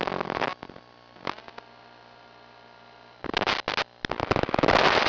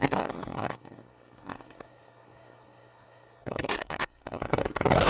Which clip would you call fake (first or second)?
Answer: second